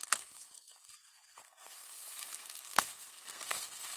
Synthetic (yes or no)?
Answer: yes